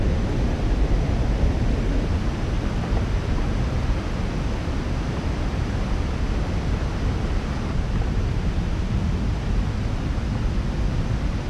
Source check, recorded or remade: recorded